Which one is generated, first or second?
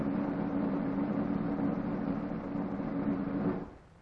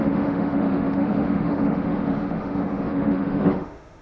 second